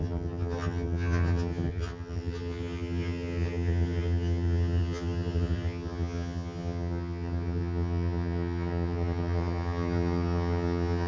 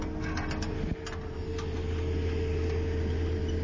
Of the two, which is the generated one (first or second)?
first